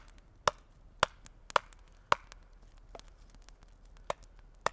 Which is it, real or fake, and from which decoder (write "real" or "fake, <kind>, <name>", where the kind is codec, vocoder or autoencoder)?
real